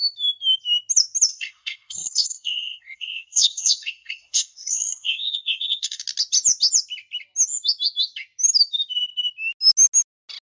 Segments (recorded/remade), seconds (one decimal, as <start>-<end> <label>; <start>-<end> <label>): 0.0-1.3 recorded; 1.3-6.0 remade; 6.0-10.5 recorded